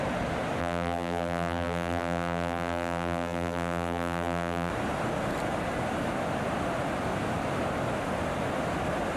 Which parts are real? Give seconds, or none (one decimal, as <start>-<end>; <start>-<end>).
0.0-0.6; 4.7-9.2